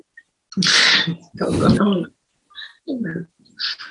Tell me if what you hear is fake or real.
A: real